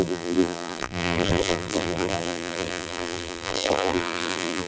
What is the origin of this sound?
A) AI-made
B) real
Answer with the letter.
A